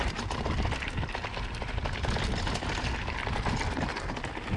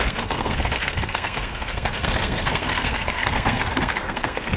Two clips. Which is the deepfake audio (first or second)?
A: second